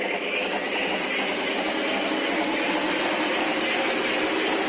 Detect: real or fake fake